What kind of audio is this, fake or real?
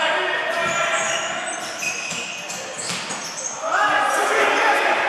real